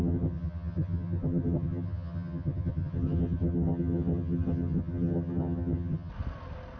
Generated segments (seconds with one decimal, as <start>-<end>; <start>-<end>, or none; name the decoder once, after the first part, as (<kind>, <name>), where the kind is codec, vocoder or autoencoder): 0.0-6.1 (vocoder, HiFi-GAN)